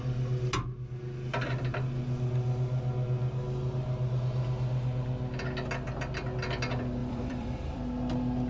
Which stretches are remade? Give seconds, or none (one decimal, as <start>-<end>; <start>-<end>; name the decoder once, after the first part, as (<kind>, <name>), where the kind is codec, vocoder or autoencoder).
7.0-7.9 (vocoder, BigVGAN v2)